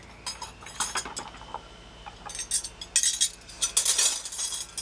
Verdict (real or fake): real